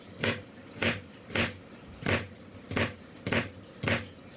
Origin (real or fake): real